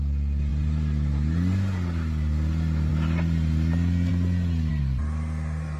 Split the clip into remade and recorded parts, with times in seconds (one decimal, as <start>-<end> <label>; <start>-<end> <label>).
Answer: 0.0-5.8 recorded

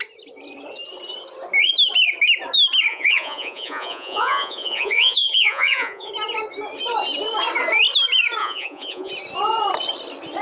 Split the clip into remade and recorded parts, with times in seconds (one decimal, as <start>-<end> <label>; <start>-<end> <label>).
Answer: 0.0-2.9 recorded; 2.9-6.1 remade; 6.1-8.4 recorded; 8.4-9.1 remade; 9.1-10.4 recorded

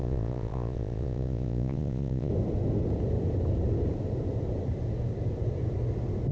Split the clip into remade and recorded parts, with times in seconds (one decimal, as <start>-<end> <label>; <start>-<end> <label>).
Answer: 0.0-2.3 remade; 2.3-6.3 recorded

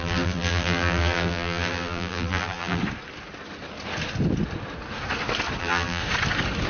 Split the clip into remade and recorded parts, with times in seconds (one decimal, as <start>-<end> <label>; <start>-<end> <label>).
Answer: 0.0-2.8 remade; 2.8-5.6 recorded; 5.6-6.0 remade; 6.0-6.7 recorded

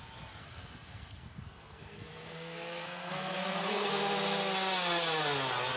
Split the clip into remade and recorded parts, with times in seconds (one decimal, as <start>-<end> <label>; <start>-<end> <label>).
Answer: 0.0-0.4 recorded; 0.4-3.9 remade; 3.9-5.8 recorded

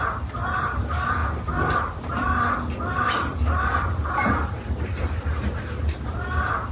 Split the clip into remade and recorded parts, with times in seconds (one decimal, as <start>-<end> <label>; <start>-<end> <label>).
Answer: 0.0-3.3 recorded; 3.3-5.1 remade; 5.1-6.7 recorded